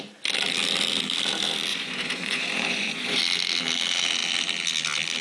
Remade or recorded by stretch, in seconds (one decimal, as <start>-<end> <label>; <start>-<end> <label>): 0.0-1.7 recorded; 1.7-3.2 remade; 3.2-5.2 recorded

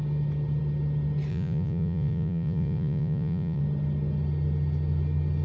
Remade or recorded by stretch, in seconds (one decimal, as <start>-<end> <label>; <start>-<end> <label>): 0.0-1.3 recorded; 1.3-3.6 remade; 3.6-5.4 recorded